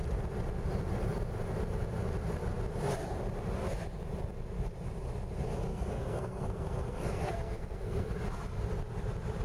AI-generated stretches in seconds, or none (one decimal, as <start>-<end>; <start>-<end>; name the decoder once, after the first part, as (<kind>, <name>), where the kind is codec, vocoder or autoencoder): 5.7-8.1 (codec, SNAC)